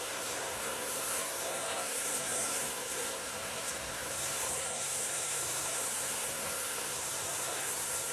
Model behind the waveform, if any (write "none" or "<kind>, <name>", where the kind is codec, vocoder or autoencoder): codec, SNAC